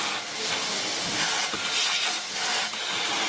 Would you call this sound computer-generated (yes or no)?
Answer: no